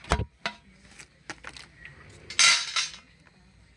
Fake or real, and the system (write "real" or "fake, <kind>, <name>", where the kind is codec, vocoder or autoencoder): real